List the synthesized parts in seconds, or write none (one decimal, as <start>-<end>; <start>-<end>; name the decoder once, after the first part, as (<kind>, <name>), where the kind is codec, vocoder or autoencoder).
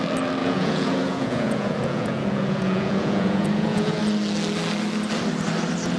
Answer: 0.4-4.0 (vocoder, Vocos)